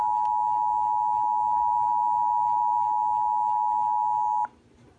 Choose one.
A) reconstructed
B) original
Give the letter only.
B